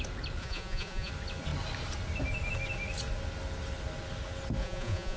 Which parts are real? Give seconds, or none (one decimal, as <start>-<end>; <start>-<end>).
0.0-0.4; 1.1-4.6